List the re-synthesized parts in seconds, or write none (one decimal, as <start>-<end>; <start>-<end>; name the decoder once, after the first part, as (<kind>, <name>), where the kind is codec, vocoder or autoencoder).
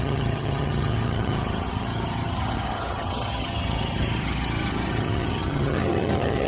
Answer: 0.0-6.5 (vocoder, HiFi-GAN)